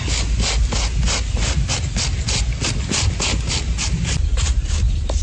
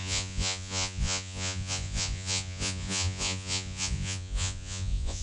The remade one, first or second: second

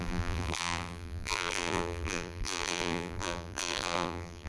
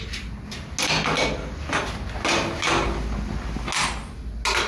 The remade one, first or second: first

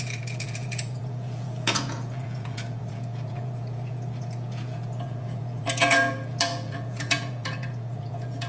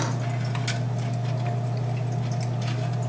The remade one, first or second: first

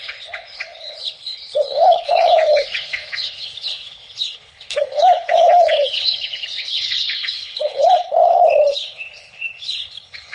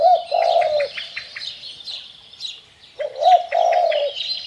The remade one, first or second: first